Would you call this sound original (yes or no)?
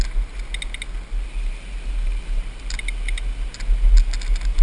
yes